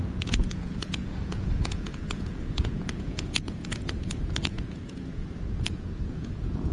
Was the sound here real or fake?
fake